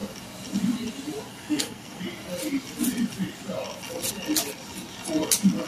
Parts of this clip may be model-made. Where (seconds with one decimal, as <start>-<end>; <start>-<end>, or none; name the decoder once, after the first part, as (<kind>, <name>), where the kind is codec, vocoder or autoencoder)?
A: 1.3-2.0 (codec, SNAC)